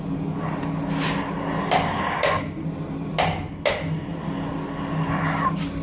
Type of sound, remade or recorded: recorded